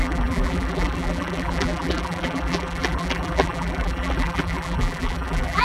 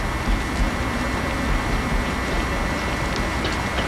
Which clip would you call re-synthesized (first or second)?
first